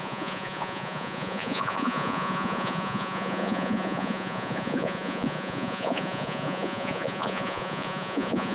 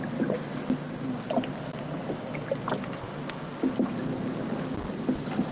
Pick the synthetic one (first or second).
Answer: first